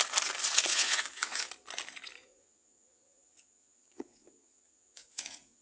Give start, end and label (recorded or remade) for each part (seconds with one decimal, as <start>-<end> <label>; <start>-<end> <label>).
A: 0.0-0.7 recorded; 0.7-1.5 remade; 1.5-2.2 recorded; 2.2-5.6 remade